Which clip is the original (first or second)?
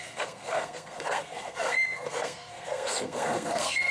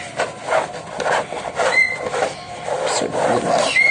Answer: second